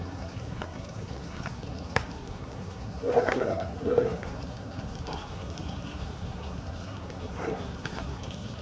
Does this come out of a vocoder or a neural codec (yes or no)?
yes